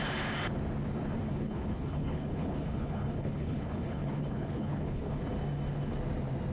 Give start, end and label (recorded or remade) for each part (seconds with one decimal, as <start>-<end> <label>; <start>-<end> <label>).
0.0-1.3 recorded; 1.3-5.2 remade; 5.2-6.5 recorded

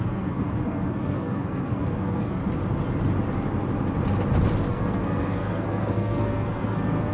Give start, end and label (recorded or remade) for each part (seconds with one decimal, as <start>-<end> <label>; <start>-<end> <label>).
0.0-2.4 remade; 2.4-4.7 recorded; 4.7-7.1 remade